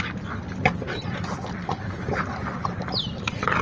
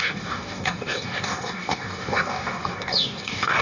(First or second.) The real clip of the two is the first